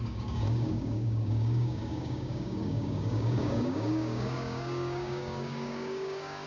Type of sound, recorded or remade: remade